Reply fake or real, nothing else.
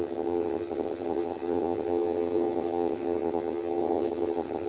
fake